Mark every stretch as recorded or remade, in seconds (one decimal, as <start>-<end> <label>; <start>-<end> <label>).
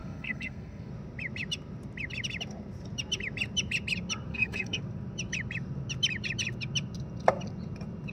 0.0-0.9 remade; 0.9-4.3 recorded; 4.3-4.8 remade; 4.8-8.1 recorded